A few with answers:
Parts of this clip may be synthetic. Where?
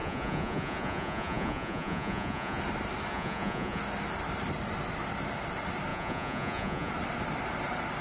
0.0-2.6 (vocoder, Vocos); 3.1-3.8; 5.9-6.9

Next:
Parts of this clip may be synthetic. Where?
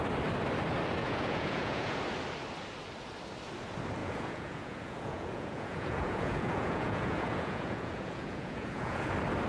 1.0-2.0 (vocoder, Vocos); 4.0-9.1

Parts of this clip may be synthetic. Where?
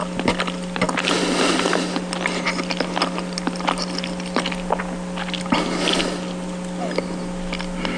none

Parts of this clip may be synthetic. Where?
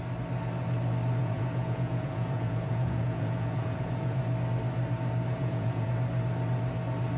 1.2-4.2 (vocoder, Vocos); 5.3-5.9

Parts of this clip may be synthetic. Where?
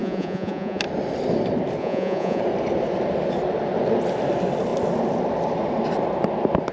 0.0-0.8 (vocoder, Vocos); 1.8-2.4